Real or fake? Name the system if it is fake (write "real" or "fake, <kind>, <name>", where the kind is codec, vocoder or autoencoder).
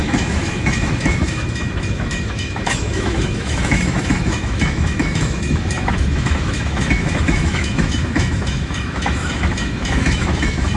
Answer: fake, autoencoder, DAC-VAE